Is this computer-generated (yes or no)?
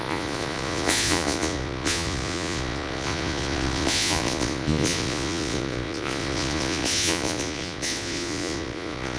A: yes